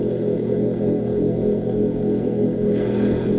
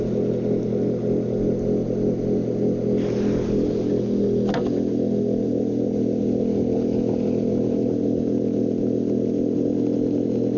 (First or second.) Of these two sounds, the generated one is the first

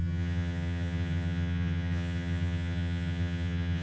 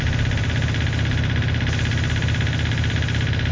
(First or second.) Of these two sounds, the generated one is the first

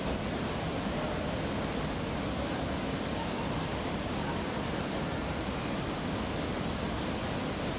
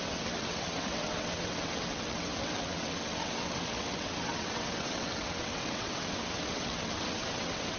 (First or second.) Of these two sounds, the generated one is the second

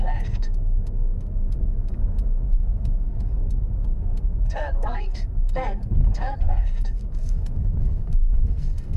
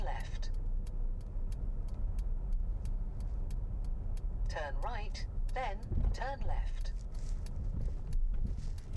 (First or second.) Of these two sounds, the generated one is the first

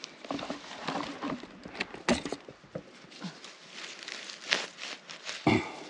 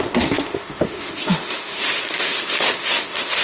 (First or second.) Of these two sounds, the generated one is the second